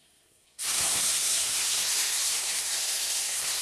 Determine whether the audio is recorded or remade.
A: remade